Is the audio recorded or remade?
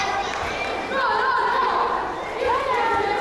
remade